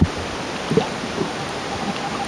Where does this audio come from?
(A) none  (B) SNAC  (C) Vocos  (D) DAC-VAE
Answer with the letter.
A